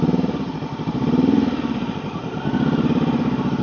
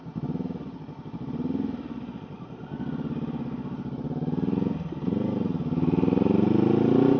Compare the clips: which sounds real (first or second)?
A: second